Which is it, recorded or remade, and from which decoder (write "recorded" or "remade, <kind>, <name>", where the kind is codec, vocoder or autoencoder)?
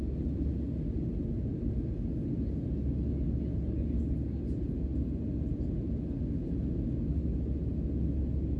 recorded